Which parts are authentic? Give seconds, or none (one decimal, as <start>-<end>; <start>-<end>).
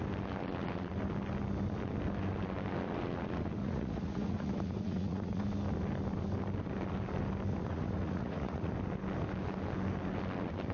0.0-3.6; 5.4-7.5; 8.7-10.7